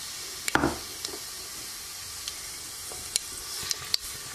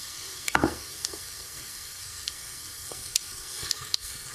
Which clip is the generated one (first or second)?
second